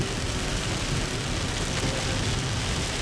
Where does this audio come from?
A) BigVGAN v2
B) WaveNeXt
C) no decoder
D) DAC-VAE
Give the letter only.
C